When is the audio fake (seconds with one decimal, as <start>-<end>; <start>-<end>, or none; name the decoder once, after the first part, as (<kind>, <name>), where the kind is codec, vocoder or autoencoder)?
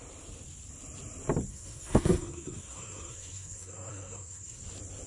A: 1.5-4.6 (codec, SNAC)